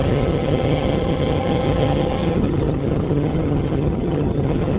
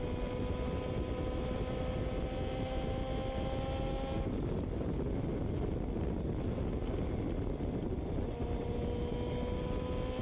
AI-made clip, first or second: first